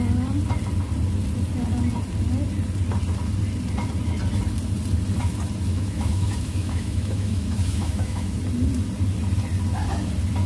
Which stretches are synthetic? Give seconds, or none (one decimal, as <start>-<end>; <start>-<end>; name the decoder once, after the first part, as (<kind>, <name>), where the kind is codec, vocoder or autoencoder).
5.7-8.4 (autoencoder, DAC-VAE)